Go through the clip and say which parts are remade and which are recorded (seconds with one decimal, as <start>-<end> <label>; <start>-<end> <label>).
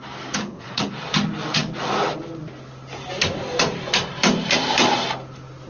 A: 0.0-0.4 recorded; 0.4-0.9 remade; 0.9-5.7 recorded